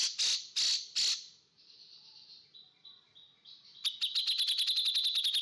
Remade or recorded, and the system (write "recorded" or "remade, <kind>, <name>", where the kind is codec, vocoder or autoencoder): recorded